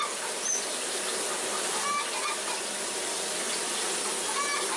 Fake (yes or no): no